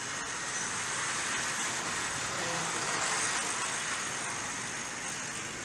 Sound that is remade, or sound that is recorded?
recorded